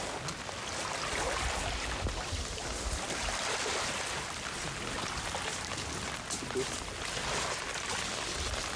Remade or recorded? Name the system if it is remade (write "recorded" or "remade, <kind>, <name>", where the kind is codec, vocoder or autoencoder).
recorded